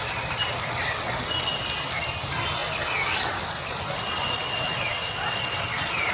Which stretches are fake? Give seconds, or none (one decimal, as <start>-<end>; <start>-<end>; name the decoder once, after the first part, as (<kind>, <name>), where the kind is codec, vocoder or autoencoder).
none